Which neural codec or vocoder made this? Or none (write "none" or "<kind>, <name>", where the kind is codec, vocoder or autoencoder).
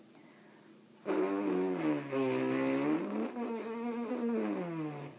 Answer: none